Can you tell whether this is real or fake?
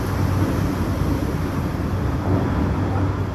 real